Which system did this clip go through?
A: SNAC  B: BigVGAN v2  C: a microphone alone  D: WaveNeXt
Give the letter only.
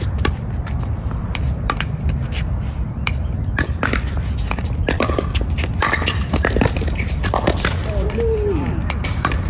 B